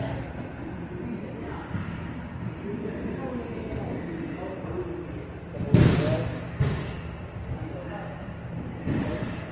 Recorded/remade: recorded